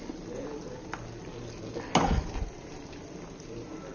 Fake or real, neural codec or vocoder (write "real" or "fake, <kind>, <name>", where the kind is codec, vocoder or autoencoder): real